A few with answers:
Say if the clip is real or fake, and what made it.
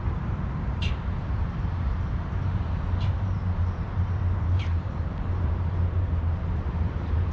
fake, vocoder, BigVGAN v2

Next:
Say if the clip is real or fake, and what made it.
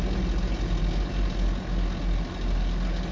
real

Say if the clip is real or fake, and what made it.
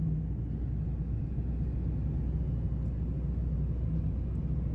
real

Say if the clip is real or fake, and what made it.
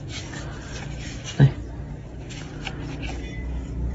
real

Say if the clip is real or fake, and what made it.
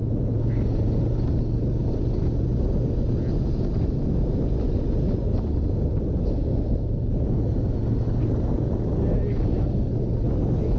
real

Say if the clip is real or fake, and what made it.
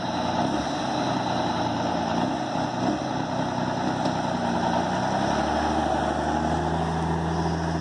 real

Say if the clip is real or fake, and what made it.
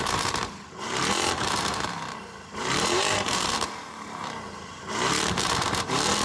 fake, vocoder, BigVGAN v2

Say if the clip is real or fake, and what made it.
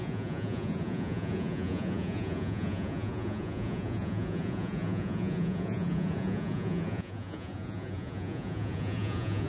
fake, vocoder, Vocos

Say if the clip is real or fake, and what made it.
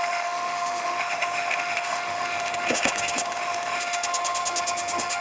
fake, autoencoder, DAC-VAE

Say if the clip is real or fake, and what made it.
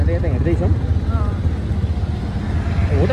real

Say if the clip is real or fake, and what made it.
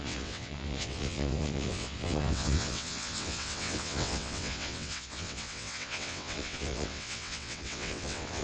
fake, vocoder, WaveNeXt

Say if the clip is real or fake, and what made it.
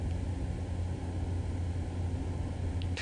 real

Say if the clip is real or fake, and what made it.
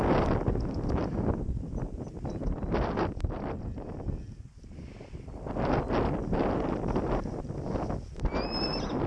real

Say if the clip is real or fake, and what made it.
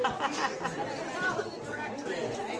real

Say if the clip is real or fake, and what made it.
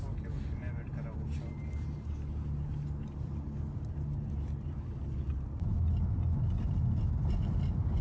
real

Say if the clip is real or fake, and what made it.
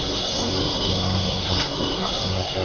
fake, codec, SNAC